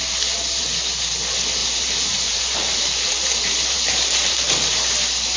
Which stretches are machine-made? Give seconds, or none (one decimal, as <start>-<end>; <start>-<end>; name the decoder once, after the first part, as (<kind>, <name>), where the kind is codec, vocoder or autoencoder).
1.6-4.4 (vocoder, BigVGAN v2)